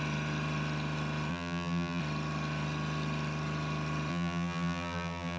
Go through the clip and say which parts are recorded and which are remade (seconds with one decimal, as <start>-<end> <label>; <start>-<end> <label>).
0.0-1.3 recorded; 1.3-2.0 remade; 2.0-4.1 recorded; 4.1-5.4 remade